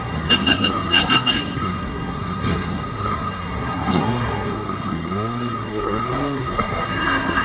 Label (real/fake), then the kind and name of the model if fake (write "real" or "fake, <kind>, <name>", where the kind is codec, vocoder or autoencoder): fake, codec, SNAC